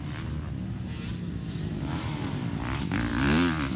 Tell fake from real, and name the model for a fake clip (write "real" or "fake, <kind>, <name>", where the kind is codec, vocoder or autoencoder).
real